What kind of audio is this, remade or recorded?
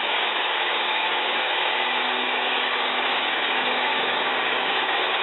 remade